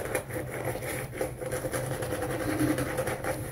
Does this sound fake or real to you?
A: real